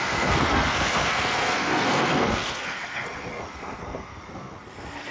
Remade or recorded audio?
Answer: remade